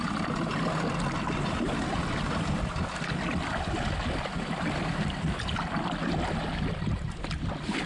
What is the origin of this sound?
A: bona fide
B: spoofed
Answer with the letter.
A